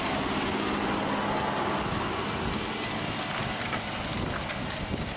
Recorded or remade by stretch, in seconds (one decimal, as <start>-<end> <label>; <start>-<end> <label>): 0.0-5.2 recorded